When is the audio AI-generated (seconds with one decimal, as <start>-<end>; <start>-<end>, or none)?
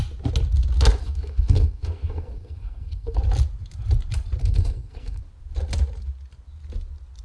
1.0-3.2; 4.4-5.2